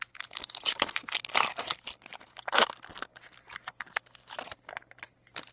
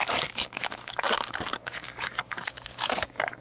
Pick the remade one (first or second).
second